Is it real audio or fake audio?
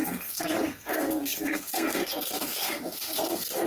fake